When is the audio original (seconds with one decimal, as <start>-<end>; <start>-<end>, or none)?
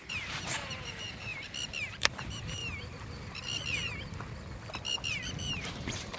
1.3-2.0; 2.6-5.5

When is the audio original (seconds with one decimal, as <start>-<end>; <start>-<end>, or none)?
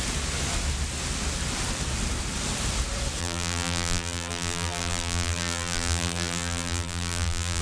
0.0-3.2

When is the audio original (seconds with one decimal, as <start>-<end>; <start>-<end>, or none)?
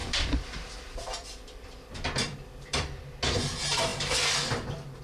3.0-5.0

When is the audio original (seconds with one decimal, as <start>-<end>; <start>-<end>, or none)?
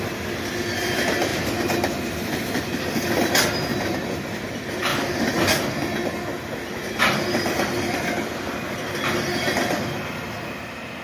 0.0-3.7; 4.4-11.0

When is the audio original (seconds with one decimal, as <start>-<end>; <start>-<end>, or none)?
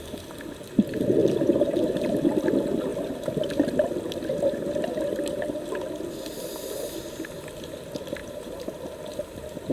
0.0-1.2; 2.2-8.2; 8.8-9.7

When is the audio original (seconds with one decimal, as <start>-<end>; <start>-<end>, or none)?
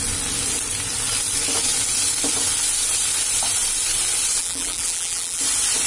0.0-4.4; 5.4-5.9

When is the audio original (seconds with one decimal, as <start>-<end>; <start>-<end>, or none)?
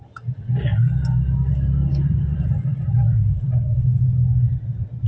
0.0-1.9; 2.5-5.1